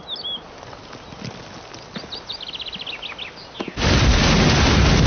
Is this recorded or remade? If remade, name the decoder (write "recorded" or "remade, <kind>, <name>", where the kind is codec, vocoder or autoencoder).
recorded